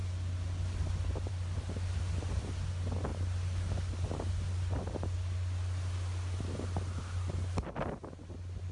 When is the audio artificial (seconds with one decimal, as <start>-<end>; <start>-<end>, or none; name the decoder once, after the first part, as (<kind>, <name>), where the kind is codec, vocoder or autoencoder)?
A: none